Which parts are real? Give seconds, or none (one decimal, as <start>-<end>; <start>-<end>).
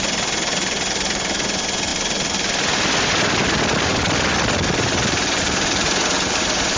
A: 0.0-6.8